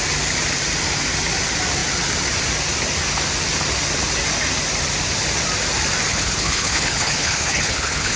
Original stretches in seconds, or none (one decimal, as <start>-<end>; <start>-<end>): 0.0-6.1